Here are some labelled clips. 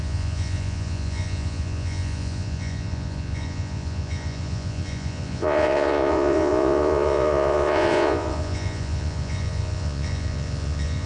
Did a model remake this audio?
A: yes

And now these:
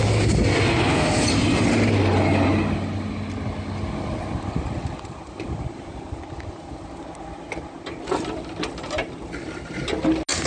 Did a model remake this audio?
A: no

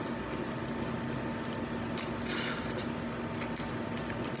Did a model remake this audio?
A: no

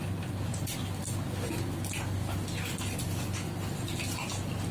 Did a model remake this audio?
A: no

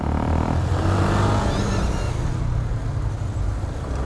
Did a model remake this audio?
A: no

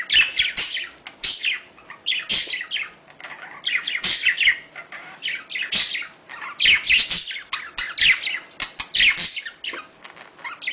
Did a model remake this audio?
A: no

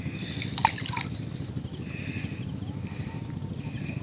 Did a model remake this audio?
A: no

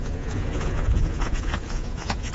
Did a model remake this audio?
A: yes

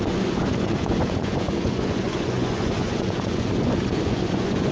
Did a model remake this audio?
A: yes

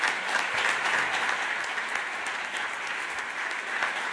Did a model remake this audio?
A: no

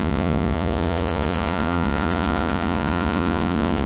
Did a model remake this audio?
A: yes